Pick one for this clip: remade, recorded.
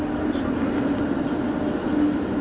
recorded